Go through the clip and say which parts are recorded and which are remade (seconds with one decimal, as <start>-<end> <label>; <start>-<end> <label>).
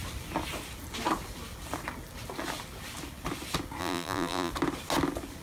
0.0-3.8 recorded; 3.8-4.5 remade; 4.5-5.4 recorded